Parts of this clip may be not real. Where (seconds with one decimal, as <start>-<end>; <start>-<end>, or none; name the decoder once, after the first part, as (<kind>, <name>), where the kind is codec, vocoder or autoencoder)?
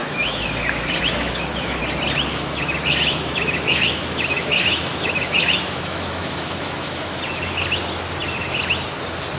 0.0-1.8 (autoencoder, DAC-VAE); 2.3-7.2